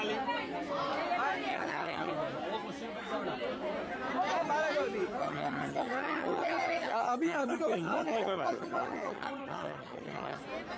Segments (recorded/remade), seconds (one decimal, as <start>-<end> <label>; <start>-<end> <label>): 0.0-1.5 recorded; 1.5-2.1 remade; 2.1-5.2 recorded; 5.2-10.4 remade; 10.4-10.8 recorded